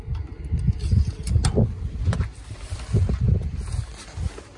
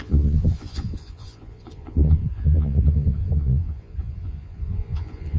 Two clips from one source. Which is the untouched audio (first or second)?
first